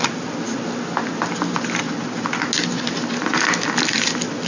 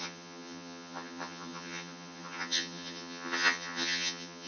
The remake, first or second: second